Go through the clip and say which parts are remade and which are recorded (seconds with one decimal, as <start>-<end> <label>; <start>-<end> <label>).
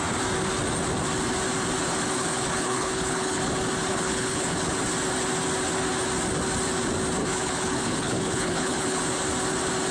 0.0-2.2 recorded; 2.2-3.4 remade; 3.4-3.9 recorded; 3.9-4.8 remade; 4.8-7.2 recorded; 7.2-9.0 remade; 9.0-9.9 recorded